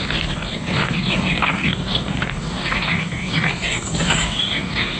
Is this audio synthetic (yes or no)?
yes